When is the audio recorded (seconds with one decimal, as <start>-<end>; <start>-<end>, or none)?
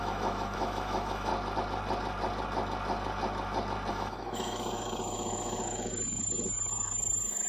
1.3-3.9